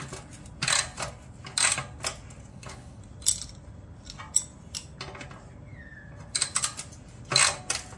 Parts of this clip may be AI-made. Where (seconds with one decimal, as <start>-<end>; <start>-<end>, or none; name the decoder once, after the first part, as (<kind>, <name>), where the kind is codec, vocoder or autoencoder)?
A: 2.5-3.0 (codec, HILCodec)